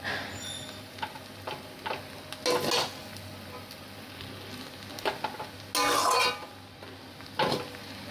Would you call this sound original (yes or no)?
yes